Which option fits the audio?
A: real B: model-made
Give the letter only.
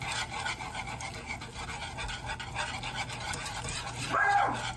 A